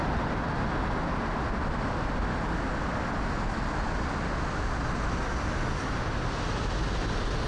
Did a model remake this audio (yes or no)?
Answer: no